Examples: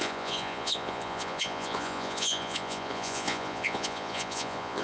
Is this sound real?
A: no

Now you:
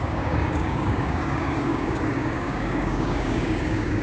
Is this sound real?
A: no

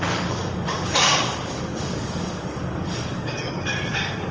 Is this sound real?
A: no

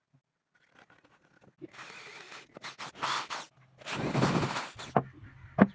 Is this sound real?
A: yes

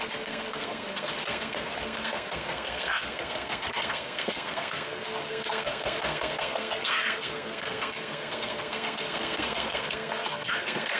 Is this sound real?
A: no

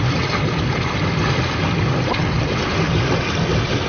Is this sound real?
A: yes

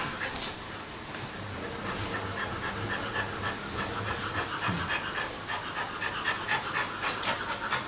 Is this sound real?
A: yes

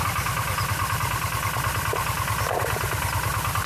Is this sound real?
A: yes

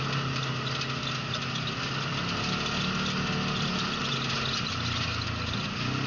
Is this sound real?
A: yes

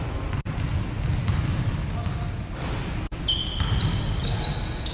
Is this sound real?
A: yes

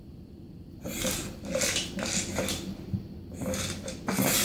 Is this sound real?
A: yes